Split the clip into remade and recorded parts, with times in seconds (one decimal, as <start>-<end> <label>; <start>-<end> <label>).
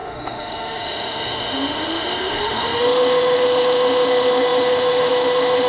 0.0-5.7 remade